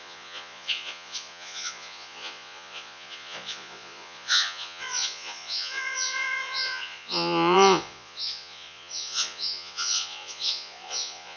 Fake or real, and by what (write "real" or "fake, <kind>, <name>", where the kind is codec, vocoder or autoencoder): fake, vocoder, Vocos